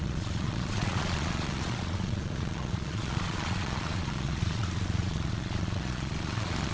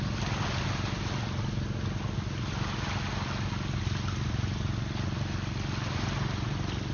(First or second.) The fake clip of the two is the first